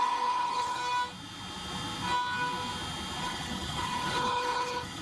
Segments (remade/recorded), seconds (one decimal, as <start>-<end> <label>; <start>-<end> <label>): 0.0-0.8 remade; 0.8-3.2 recorded; 3.2-5.0 remade